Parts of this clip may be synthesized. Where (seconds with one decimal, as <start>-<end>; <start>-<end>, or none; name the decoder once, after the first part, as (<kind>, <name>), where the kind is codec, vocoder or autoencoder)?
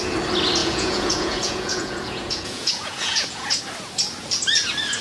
0.6-3.6 (vocoder, Vocos)